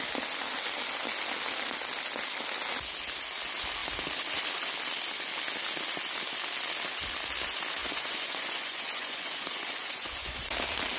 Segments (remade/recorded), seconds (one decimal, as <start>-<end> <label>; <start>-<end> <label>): 0.0-7.8 recorded; 7.8-10.5 remade; 10.5-11.0 recorded